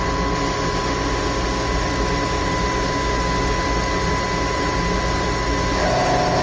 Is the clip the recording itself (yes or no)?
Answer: yes